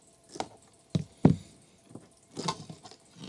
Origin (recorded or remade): recorded